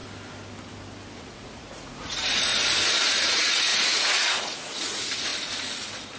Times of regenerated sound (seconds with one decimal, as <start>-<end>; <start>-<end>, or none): 1.2-2.5; 3.1-5.3